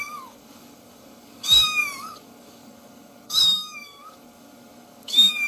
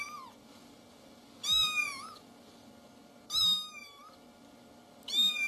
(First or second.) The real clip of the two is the second